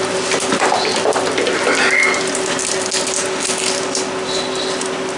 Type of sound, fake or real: real